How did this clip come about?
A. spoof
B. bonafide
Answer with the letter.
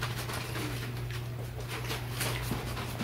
B